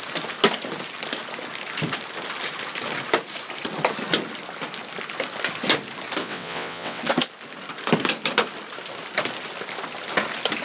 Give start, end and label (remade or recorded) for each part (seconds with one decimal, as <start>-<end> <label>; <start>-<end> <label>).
0.0-6.2 recorded; 6.2-7.0 remade; 7.0-10.6 recorded